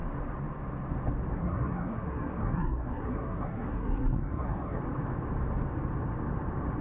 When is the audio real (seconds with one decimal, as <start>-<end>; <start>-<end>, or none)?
0.0-1.3; 4.8-6.8